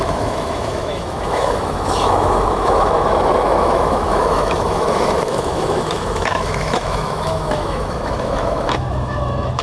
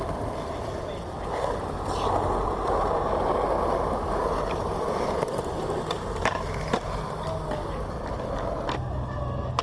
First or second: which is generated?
first